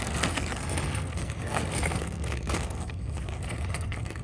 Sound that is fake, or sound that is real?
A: fake